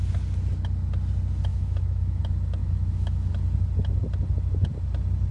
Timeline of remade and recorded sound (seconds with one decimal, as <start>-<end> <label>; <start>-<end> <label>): 0.0-1.5 recorded; 1.5-2.2 remade; 2.2-2.6 recorded; 2.6-3.3 remade; 3.3-5.3 recorded